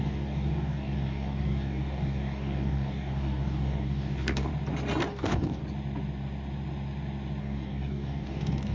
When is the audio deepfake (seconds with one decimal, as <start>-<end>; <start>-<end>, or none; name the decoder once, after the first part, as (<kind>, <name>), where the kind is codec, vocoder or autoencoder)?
0.0-4.5 (codec, DAC); 5.1-5.6; 7.4-8.7